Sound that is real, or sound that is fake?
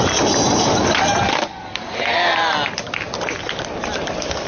real